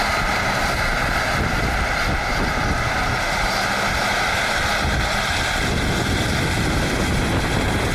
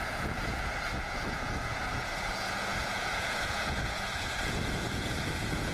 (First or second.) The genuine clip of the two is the first